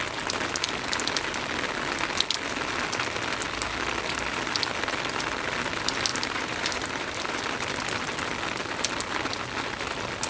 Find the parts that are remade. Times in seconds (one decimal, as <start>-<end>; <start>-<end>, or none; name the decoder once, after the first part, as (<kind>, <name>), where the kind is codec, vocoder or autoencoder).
6.1-7.2 (vocoder, BigVGAN v2)